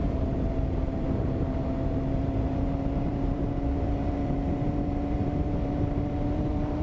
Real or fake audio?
fake